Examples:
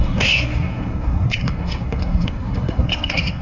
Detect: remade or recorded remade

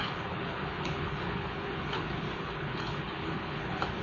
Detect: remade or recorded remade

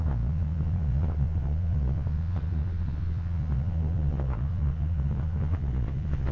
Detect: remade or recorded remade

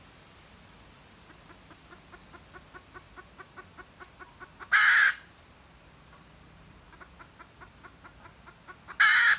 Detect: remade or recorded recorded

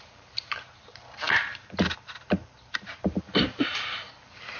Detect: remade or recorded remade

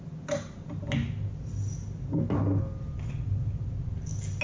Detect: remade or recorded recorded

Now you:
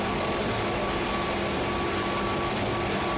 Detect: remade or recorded recorded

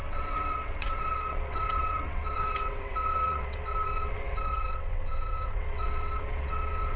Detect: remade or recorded remade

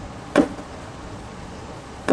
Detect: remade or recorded remade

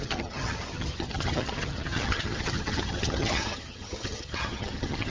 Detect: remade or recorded remade